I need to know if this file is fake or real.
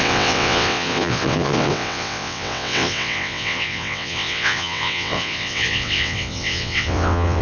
fake